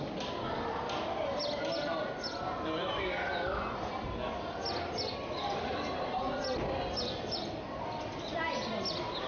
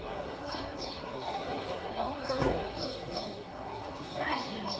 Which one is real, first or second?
first